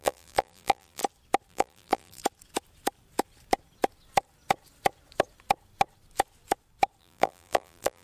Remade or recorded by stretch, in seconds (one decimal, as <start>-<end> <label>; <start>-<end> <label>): 0.0-1.0 remade; 1.0-1.5 recorded; 1.5-2.2 remade; 2.2-7.0 recorded; 7.0-8.0 remade